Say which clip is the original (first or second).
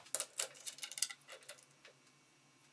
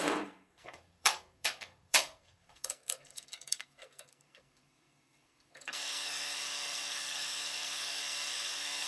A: first